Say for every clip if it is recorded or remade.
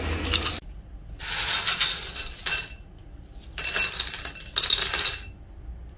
recorded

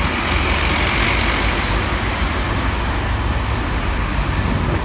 recorded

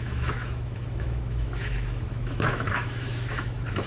remade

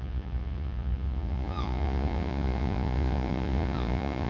remade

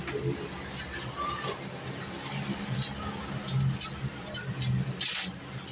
recorded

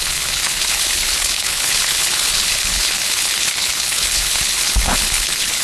remade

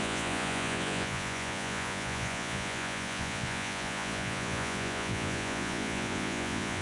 remade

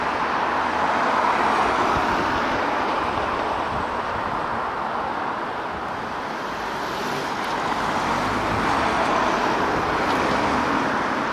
recorded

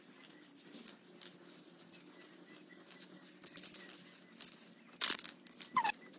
remade